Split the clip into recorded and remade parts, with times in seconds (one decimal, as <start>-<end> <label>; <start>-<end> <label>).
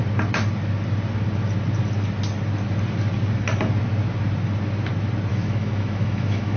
0.0-5.3 recorded; 5.3-6.6 remade